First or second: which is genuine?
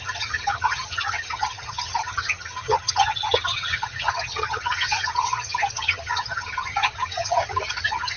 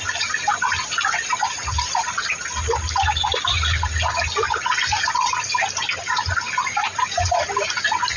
second